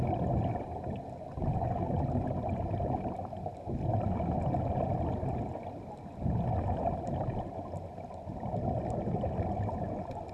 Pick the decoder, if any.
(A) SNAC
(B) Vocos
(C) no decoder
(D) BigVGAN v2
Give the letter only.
C